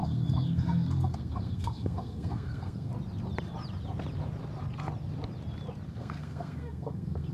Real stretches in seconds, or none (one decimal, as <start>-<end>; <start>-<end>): 2.9-5.9